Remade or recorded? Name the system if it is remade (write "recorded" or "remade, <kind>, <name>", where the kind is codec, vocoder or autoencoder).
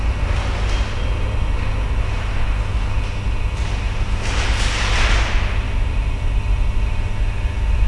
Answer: recorded